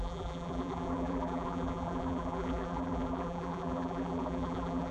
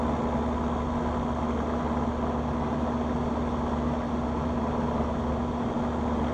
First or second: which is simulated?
first